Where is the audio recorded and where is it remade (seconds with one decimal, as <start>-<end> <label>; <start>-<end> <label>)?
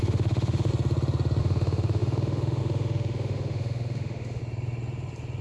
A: 0.0-0.7 remade; 0.7-1.4 recorded; 1.4-4.4 remade; 4.4-5.4 recorded